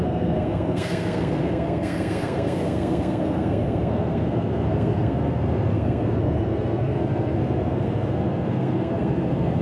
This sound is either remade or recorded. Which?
remade